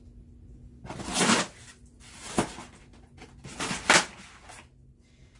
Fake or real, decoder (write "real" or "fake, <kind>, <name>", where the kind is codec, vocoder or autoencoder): real